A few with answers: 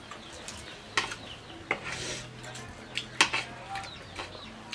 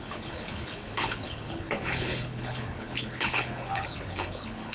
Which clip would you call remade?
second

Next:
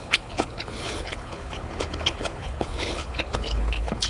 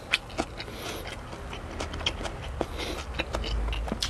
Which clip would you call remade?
first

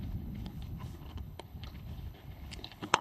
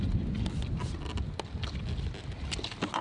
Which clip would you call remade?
first